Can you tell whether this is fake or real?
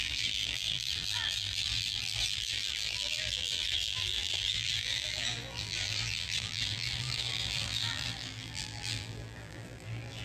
fake